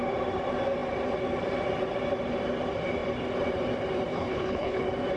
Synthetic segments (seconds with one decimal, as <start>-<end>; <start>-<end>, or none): 4.1-4.8